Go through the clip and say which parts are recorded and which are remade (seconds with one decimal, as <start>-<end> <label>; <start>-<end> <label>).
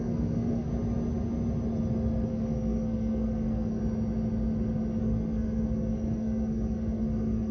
0.0-0.7 remade; 0.7-2.3 recorded; 2.3-3.8 remade; 3.8-5.0 recorded; 5.0-7.5 remade